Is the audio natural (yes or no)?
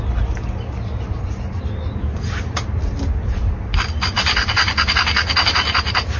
yes